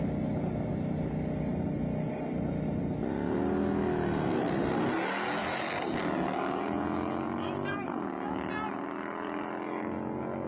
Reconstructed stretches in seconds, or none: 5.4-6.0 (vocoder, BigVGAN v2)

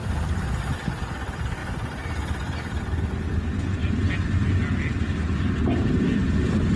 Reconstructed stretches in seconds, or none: 0.0-1.0 (vocoder, BigVGAN v2); 1.6-2.8; 6.2-6.8

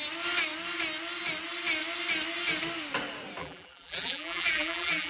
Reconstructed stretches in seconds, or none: 3.4-5.1 (vocoder, BigVGAN v2)

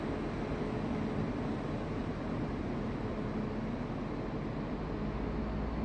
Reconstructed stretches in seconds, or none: 2.0-2.6 (vocoder, BigVGAN v2)

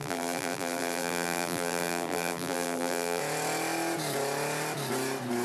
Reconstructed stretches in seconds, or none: 0.0-3.2 (vocoder, BigVGAN v2)

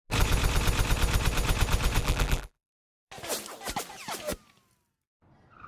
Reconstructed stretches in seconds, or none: 2.0-3.1 (vocoder, BigVGAN v2)

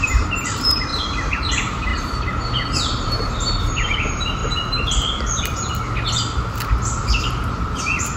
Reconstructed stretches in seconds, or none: 0.0-4.4 (vocoder, BigVGAN v2); 7.2-8.2